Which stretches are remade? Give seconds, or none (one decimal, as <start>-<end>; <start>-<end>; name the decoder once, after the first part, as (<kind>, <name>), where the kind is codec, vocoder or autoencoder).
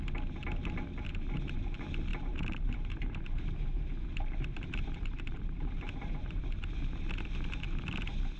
2.1-6.4 (vocoder, BigVGAN v2)